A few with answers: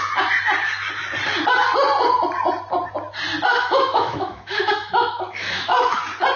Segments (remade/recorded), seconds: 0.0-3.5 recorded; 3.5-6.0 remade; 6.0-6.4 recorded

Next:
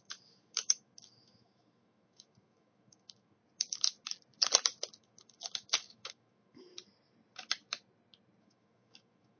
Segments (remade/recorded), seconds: 0.0-3.4 remade; 3.4-5.0 recorded; 5.0-6.7 remade; 6.7-8.4 recorded; 8.4-9.4 remade

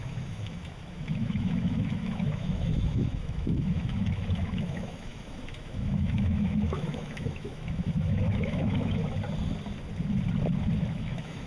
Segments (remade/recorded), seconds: 0.0-9.0 remade; 9.0-10.9 recorded; 10.9-11.5 remade